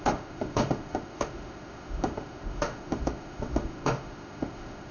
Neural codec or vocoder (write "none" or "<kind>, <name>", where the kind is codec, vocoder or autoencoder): autoencoder, DAC-VAE